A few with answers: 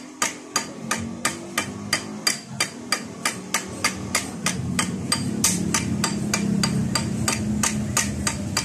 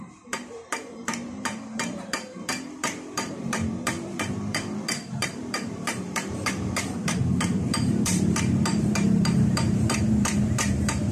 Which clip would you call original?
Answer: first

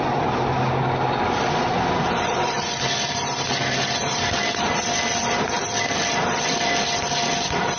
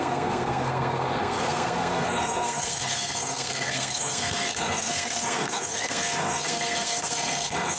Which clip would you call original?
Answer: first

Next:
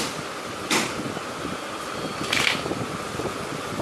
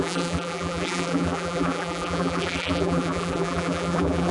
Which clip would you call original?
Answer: first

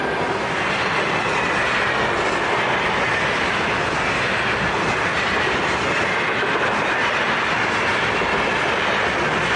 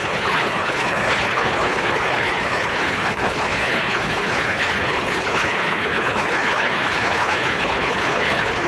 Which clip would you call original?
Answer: first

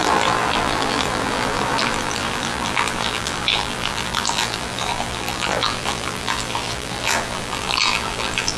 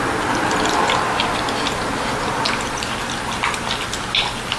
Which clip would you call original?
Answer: second